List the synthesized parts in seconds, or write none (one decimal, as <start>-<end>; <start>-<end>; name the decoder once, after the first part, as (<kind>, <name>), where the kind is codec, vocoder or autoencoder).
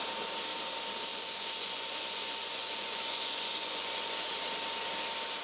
1.1-4.3 (vocoder, Vocos)